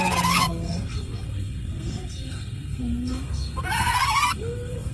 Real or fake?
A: fake